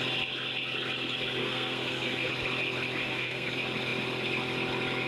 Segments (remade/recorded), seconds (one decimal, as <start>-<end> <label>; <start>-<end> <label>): 0.0-1.4 recorded; 1.4-2.3 remade; 2.3-3.0 recorded; 3.0-3.5 remade; 3.5-5.1 recorded